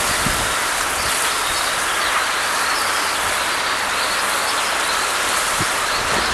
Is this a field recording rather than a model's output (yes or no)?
yes